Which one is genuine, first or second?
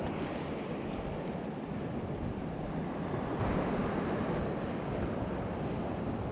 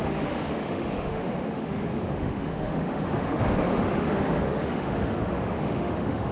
first